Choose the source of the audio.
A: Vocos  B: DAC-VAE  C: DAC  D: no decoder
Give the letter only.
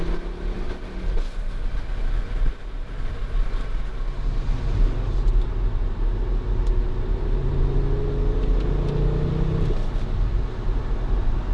D